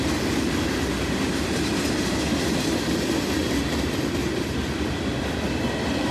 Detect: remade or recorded recorded